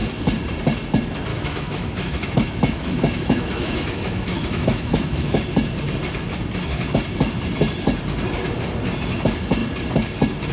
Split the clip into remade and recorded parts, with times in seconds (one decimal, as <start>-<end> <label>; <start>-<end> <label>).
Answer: 0.0-1.3 recorded; 1.3-5.4 remade; 5.4-10.5 recorded